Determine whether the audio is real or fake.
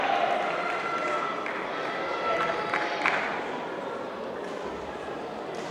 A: real